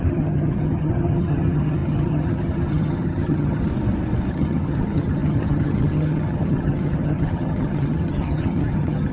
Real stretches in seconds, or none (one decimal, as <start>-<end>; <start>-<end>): 3.7-4.3

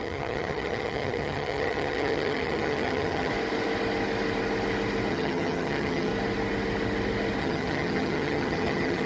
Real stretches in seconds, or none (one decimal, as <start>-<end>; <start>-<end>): 3.3-5.1; 6.1-7.4